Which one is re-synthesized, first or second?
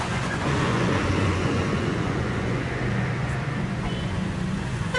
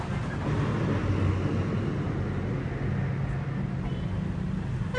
first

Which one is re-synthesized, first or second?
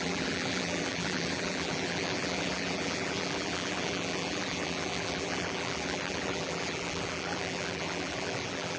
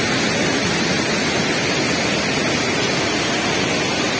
first